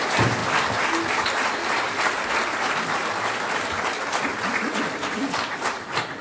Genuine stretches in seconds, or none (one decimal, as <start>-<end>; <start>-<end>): 0.4-1.1; 1.6-4.8

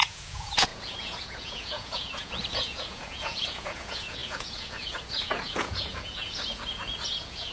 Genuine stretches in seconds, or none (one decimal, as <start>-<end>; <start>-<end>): none

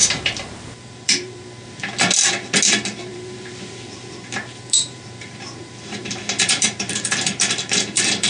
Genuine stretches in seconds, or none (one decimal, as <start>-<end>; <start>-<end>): 1.5-3.1

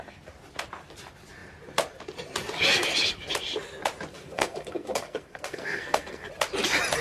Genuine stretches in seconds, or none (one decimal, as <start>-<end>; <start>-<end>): 0.0-4.1; 6.3-7.0

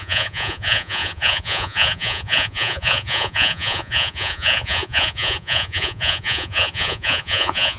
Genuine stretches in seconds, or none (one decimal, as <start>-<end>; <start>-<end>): none

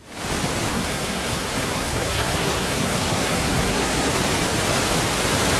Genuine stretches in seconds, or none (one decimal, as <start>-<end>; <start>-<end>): 0.0-0.7; 4.1-5.6

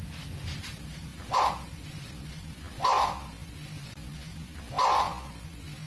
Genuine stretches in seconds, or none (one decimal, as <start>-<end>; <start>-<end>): 0.0-5.9

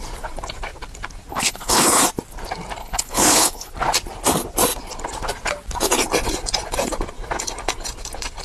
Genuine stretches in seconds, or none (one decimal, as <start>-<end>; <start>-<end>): 0.0-1.3; 2.0-2.8; 3.7-8.4